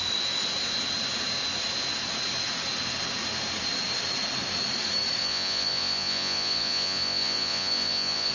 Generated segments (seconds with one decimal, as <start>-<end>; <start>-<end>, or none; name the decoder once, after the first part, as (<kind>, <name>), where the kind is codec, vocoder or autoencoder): 5.2-8.3 (vocoder, Vocos)